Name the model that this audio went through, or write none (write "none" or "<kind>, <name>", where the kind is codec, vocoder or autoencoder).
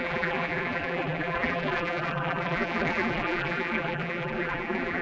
vocoder, BigVGAN v2